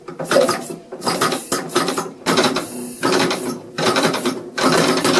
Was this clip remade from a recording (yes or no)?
yes